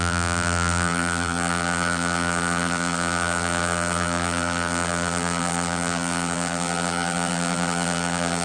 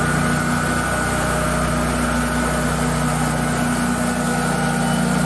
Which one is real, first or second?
second